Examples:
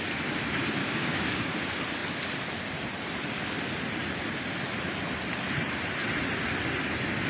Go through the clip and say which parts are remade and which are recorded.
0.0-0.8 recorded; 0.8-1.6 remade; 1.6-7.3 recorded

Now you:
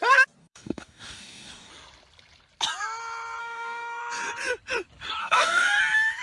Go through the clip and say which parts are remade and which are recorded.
0.0-0.4 recorded; 0.4-1.7 remade; 1.7-3.4 recorded; 3.4-4.0 remade; 4.0-5.2 recorded; 5.2-5.8 remade; 5.8-6.2 recorded

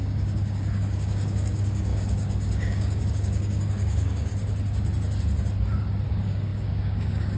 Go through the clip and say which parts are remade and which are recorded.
0.0-4.3 remade; 4.3-6.1 recorded; 6.1-7.4 remade

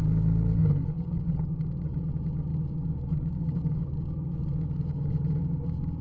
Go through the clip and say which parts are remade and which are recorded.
0.0-0.6 recorded; 0.6-2.0 remade; 2.0-2.5 recorded; 2.5-5.1 remade; 5.1-6.0 recorded

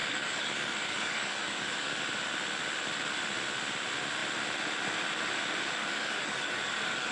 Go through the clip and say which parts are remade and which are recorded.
0.0-2.0 remade; 2.0-5.8 recorded; 5.8-7.1 remade